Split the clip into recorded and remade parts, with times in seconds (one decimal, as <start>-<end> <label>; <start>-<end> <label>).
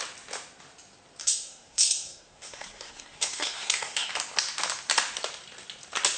0.0-1.2 recorded; 1.2-4.1 remade; 4.1-6.2 recorded